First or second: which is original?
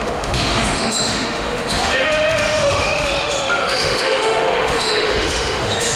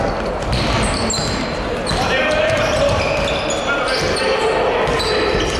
second